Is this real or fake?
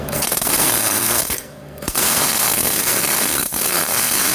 fake